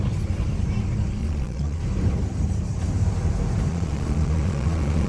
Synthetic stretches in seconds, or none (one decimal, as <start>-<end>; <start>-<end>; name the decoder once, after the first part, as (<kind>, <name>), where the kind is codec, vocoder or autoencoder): 1.2-1.8 (vocoder, Vocos); 3.7-5.1